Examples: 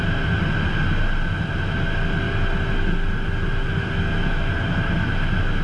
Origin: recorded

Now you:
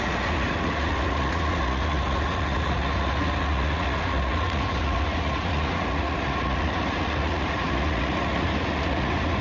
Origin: remade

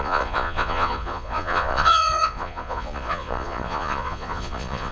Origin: remade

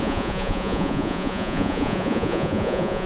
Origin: remade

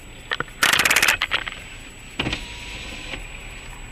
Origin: recorded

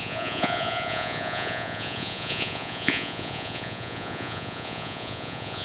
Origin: remade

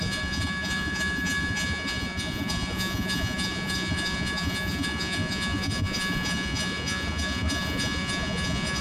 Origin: remade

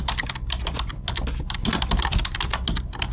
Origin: recorded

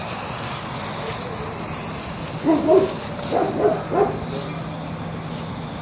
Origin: recorded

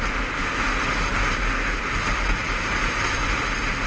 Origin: recorded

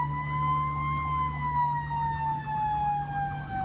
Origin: recorded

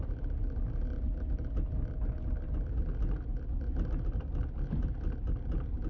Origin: recorded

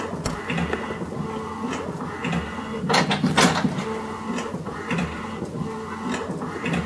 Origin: recorded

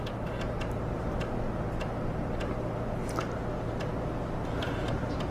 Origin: recorded